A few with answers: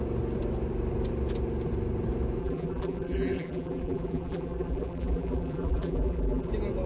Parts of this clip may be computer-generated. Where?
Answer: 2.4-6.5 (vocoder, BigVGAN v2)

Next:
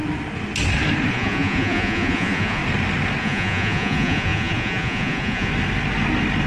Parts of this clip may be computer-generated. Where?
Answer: 1.1-2.6 (vocoder, Vocos); 3.2-5.5